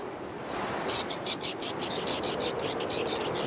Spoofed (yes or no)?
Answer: no